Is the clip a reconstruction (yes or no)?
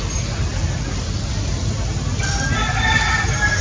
no